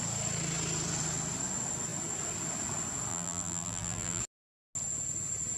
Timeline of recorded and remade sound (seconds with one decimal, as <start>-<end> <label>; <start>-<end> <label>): 0.0-3.1 recorded; 3.1-4.2 remade; 4.2-5.6 recorded